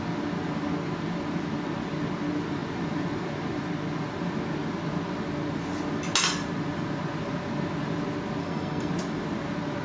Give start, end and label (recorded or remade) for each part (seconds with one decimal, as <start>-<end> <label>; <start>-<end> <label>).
0.0-8.4 recorded; 8.4-8.9 remade; 8.9-9.8 recorded